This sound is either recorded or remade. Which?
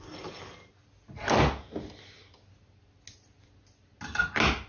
recorded